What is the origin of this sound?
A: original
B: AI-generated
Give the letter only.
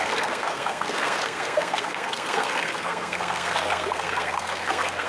B